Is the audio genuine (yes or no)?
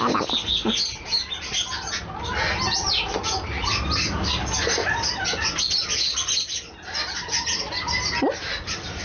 yes